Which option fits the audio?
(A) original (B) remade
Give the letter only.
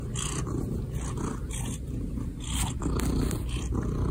A